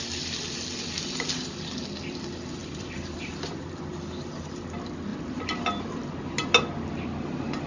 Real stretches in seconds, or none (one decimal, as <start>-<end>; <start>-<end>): 0.0-2.6; 4.1-5.1; 6.0-7.7

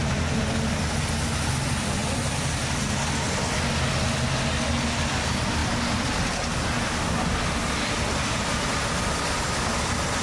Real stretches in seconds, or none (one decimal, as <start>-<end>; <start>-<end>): 0.0-10.2